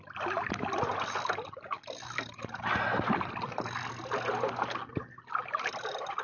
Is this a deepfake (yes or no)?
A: no